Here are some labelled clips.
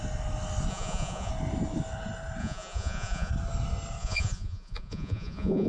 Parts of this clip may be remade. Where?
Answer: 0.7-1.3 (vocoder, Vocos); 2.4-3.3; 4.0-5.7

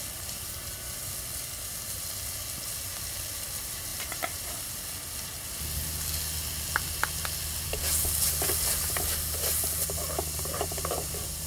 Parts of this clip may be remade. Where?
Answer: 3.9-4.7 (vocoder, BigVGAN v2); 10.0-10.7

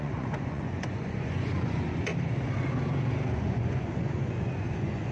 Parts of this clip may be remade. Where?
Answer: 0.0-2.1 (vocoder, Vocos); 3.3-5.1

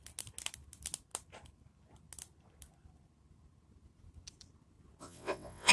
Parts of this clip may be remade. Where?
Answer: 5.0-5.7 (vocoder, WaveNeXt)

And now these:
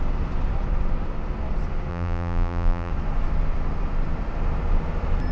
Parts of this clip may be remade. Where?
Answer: 1.9-2.9 (vocoder, BigVGAN v2)